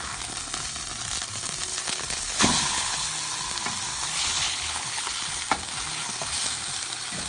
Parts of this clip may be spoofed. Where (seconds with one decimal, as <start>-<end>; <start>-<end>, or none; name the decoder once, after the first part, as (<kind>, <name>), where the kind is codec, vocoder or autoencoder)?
1.7-3.1 (codec, HILCodec); 3.9-5.2